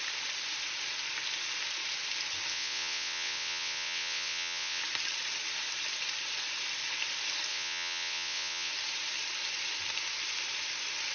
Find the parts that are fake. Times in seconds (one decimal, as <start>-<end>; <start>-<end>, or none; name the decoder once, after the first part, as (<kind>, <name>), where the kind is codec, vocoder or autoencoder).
2.5-4.8 (vocoder, WaveNeXt); 7.5-8.7

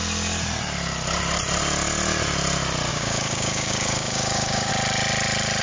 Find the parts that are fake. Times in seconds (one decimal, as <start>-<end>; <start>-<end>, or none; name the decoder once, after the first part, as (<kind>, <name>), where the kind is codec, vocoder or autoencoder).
2.9-4.7 (codec, DAC)